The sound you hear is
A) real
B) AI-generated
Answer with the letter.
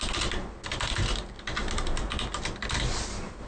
A